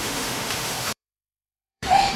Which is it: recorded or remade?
remade